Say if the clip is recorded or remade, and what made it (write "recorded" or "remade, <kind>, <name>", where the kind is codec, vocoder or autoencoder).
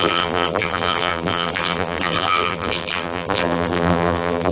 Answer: remade, vocoder, BigVGAN v2